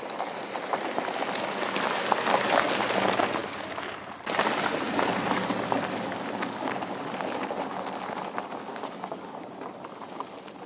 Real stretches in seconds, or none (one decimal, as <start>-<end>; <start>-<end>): 0.0-8.7; 9.5-10.7